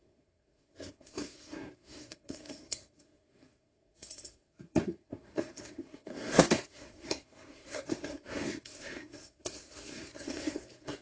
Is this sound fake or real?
fake